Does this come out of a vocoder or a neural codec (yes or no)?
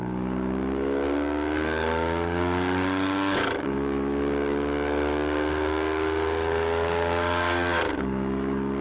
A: yes